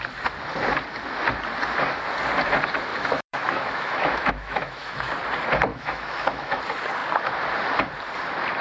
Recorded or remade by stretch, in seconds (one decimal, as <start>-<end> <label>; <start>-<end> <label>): 0.0-2.9 recorded; 2.9-5.1 remade; 5.1-5.7 recorded; 5.7-6.6 remade; 6.6-8.6 recorded